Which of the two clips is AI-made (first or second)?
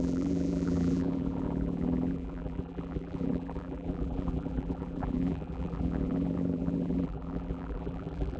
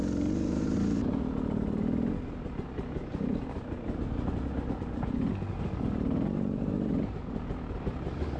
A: first